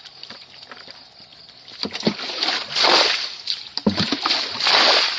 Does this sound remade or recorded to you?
recorded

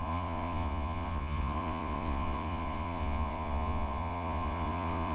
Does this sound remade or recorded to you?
remade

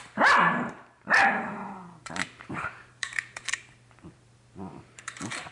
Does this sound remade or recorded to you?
remade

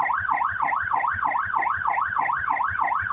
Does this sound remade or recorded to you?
recorded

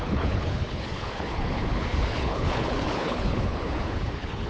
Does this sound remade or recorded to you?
remade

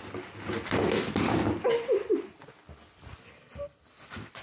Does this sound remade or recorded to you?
recorded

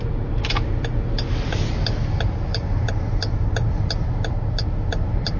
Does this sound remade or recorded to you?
recorded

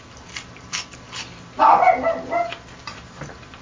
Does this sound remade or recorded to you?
remade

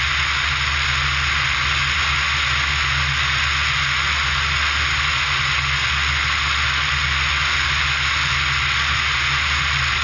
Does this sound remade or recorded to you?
recorded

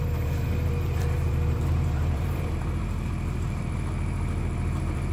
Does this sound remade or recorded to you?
remade